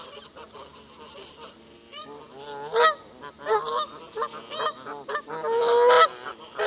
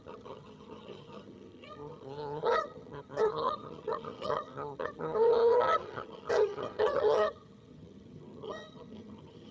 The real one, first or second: first